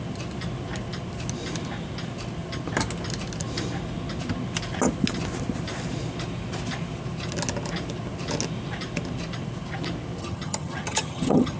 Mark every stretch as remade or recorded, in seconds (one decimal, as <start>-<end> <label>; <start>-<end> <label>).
0.0-10.2 recorded; 10.2-11.6 remade